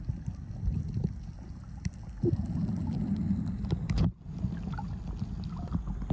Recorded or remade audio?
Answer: recorded